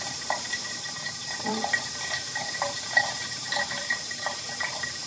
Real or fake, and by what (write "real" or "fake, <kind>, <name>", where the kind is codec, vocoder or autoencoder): fake, vocoder, BigVGAN v2